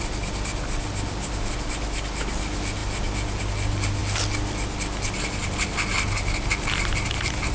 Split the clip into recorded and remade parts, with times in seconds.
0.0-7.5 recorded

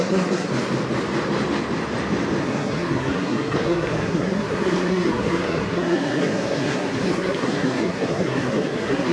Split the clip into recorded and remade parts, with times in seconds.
0.0-0.5 remade; 0.5-2.4 recorded; 2.4-9.1 remade